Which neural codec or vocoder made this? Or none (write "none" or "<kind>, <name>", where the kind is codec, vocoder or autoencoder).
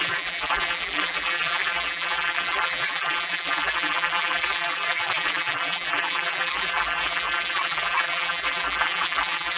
vocoder, BigVGAN v2